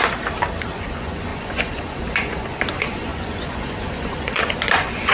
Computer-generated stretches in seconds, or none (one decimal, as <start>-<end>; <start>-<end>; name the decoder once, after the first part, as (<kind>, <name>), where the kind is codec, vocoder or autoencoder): 0.7-5.1 (vocoder, Vocos)